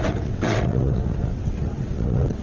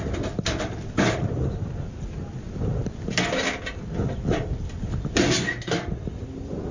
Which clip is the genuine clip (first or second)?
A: second